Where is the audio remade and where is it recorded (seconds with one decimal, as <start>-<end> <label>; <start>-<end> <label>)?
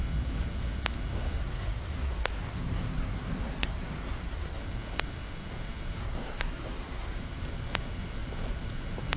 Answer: 0.0-1.4 recorded; 1.4-4.6 remade; 4.6-6.0 recorded; 6.0-7.2 remade; 7.2-9.2 recorded